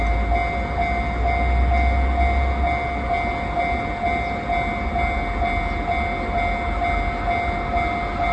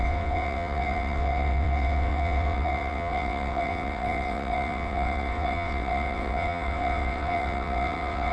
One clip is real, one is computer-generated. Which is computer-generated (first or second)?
second